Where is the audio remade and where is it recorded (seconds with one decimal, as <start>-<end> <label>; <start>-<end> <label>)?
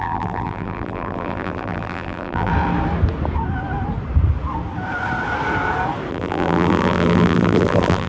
0.0-2.5 remade; 2.5-6.1 recorded; 6.1-8.1 remade